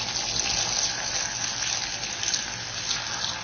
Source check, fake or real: real